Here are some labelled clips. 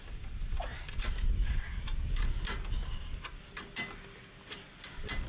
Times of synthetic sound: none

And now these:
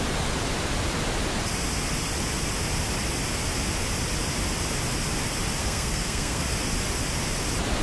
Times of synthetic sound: 5.6-6.4 (codec, SNAC)